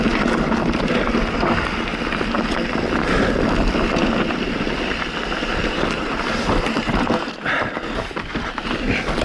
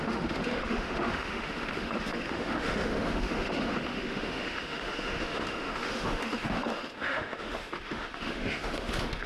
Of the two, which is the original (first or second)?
first